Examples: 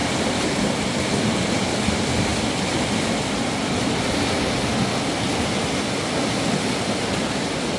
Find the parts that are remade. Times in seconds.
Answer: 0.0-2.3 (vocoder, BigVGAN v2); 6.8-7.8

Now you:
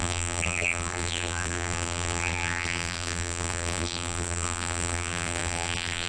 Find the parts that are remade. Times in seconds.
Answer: 0.0-6.1 (vocoder, BigVGAN v2)

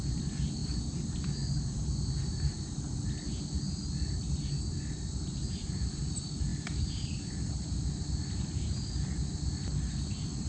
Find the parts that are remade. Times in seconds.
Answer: none